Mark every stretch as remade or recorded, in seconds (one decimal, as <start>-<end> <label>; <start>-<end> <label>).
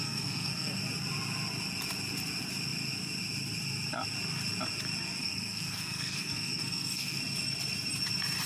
0.0-0.8 remade; 0.8-5.2 recorded; 5.2-7.2 remade; 7.2-8.5 recorded